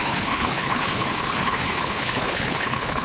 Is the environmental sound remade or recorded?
remade